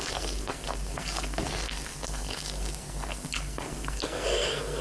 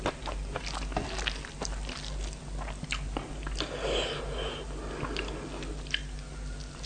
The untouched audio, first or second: second